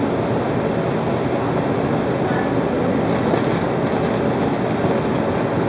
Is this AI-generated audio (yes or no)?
no